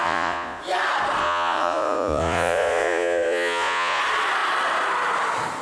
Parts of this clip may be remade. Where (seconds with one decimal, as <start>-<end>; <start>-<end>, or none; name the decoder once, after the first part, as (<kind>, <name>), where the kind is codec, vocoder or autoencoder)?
0.0-0.6 (vocoder, Vocos); 1.2-4.0